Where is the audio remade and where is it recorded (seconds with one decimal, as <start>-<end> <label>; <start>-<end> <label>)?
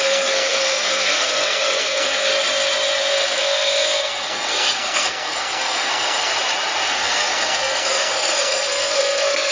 0.0-2.3 remade; 2.3-3.1 recorded; 3.1-6.3 remade; 6.3-6.9 recorded; 6.9-9.5 remade